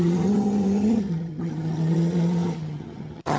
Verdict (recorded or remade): remade